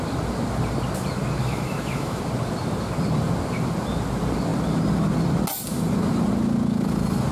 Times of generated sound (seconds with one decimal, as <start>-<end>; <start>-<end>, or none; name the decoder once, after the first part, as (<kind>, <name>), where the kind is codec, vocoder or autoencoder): 1.4-2.2 (autoencoder, DAC-VAE)